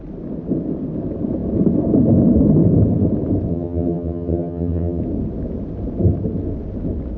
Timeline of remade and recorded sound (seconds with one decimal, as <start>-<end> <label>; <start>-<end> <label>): 0.0-3.5 recorded; 3.5-5.0 remade; 5.0-7.2 recorded